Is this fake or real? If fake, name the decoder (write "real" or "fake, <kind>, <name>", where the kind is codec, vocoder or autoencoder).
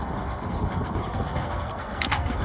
fake, codec, SNAC